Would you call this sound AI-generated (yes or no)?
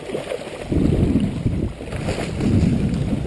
no